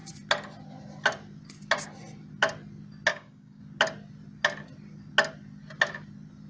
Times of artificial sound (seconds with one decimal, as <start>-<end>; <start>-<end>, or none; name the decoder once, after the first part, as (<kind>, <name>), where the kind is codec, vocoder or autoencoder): 3.1-3.6 (codec, DAC)